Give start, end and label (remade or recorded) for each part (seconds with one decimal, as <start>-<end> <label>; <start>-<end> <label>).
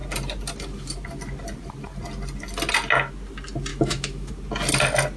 0.0-3.7 recorded; 3.7-4.3 remade; 4.3-5.2 recorded